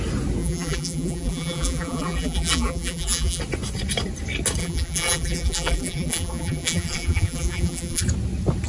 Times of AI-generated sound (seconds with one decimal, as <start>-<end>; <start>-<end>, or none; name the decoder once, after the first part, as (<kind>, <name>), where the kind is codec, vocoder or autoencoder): 0.4-3.4 (vocoder, BigVGAN v2); 4.6-8.0